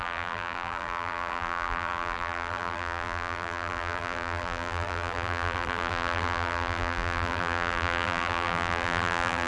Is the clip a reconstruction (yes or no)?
yes